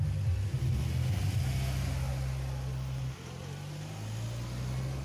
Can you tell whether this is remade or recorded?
recorded